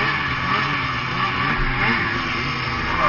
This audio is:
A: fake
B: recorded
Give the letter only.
B